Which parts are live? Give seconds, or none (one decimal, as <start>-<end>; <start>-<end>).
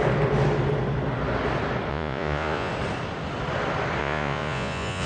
0.0-1.9; 2.7-4.0